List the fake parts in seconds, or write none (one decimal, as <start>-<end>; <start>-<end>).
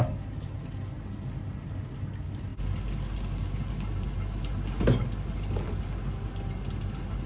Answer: none